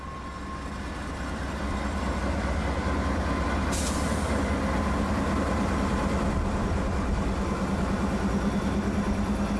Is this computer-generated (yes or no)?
no